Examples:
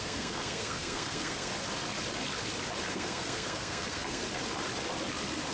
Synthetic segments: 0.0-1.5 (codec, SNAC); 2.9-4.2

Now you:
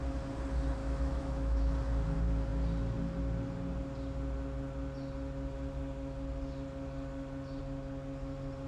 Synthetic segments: 0.8-1.7 (autoencoder, DAC-VAE)

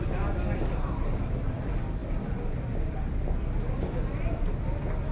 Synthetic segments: none

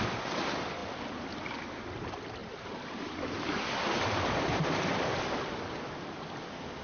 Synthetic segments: none

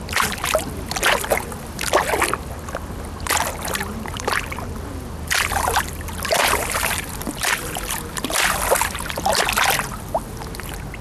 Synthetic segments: 4.1-6.9 (vocoder, BigVGAN v2)

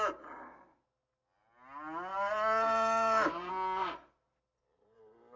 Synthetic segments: 2.1-3.5 (vocoder, BigVGAN v2)

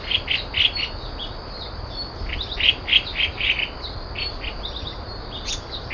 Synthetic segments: none

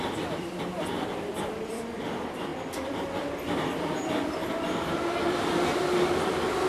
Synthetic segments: 0.0-6.7 (vocoder, BigVGAN v2)